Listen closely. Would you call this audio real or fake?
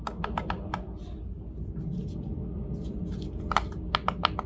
real